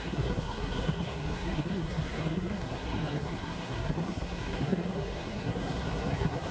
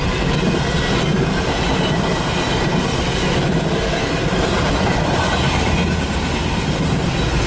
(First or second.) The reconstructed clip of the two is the first